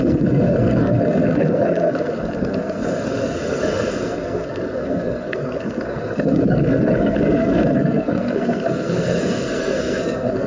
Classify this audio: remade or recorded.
remade